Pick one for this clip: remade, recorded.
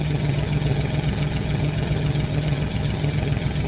remade